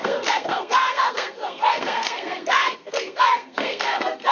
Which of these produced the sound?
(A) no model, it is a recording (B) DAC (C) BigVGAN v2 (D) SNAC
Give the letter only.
D